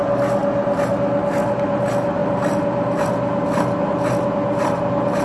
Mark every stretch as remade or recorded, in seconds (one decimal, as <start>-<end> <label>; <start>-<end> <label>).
0.0-5.2 recorded